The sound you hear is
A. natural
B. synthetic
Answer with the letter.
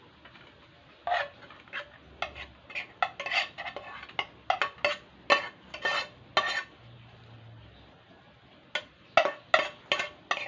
A